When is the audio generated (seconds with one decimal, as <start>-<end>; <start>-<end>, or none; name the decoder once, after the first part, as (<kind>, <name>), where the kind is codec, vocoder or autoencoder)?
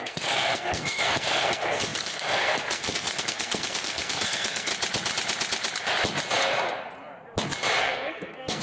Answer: 0.0-4.7 (codec, SNAC); 7.8-8.6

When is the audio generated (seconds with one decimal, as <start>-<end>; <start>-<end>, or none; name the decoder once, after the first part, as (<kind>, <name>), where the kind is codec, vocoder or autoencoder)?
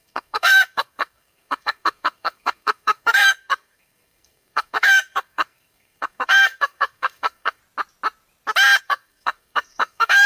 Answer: 0.0-7.6 (codec, SNAC); 8.8-10.3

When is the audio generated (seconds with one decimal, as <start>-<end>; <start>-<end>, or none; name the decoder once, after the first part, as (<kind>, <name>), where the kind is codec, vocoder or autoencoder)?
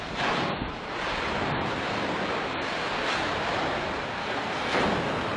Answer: 4.2-4.8 (codec, SNAC)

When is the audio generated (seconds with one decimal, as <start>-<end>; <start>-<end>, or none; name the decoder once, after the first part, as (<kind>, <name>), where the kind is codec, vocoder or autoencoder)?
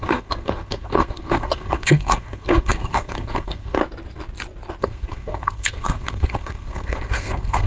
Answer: 0.0-3.8 (codec, SNAC); 4.8-7.7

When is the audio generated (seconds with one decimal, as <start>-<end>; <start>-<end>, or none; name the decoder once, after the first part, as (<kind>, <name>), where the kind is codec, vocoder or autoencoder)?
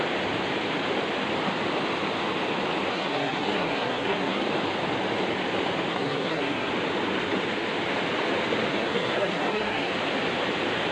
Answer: 2.9-4.4 (codec, SNAC); 5.9-6.7; 8.7-9.9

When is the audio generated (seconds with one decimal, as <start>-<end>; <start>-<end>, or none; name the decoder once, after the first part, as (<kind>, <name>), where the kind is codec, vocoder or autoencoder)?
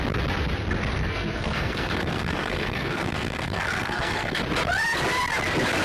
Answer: 0.9-4.4 (codec, SNAC)